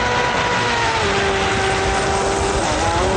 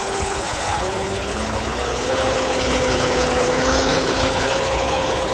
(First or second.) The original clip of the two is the first